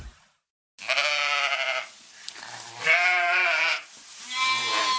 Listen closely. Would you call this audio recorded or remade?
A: recorded